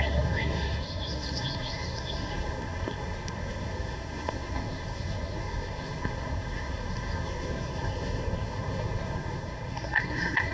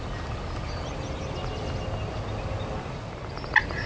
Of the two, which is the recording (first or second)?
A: second